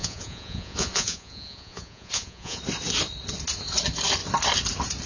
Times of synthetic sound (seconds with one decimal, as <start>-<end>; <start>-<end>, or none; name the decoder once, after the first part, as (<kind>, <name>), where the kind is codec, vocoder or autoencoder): 0.0-2.6 (vocoder, Vocos)